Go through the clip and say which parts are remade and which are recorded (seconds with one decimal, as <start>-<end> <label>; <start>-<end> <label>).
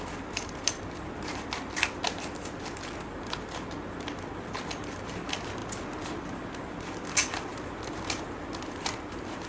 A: 0.0-9.5 recorded